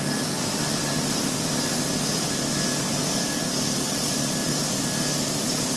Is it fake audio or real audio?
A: real